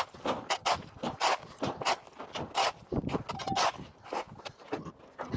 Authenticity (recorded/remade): recorded